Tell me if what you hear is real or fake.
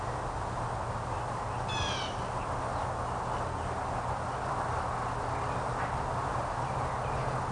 real